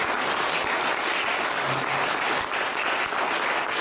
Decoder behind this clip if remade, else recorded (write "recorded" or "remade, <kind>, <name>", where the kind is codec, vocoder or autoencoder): recorded